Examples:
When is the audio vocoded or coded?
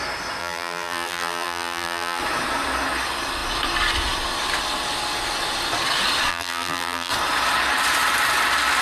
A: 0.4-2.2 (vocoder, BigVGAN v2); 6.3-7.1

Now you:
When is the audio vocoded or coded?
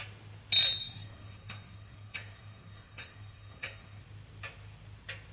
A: 0.8-4.0 (codec, SNAC)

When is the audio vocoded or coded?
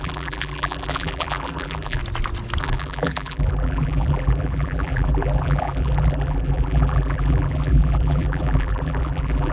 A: 0.0-2.0 (vocoder, BigVGAN v2); 2.6-9.5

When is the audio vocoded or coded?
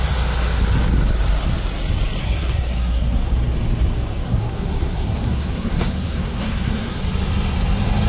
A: 2.2-3.3 (codec, SNAC); 4.2-7.0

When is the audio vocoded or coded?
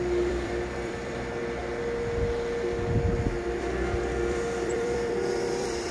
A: 0.0-1.6 (vocoder, BigVGAN v2); 4.0-5.9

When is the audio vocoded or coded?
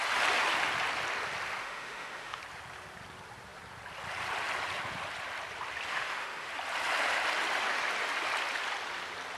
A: 1.6-2.4 (autoencoder, DAC-VAE); 5.9-6.5